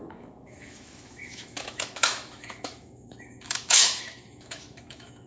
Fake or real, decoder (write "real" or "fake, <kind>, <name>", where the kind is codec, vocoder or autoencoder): fake, autoencoder, DAC-VAE